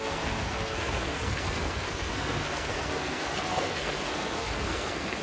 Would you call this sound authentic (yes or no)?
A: no